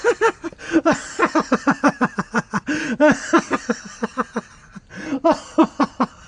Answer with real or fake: real